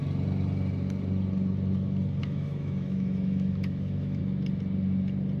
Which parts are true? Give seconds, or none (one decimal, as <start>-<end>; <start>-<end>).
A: 0.0-2.2; 4.2-5.4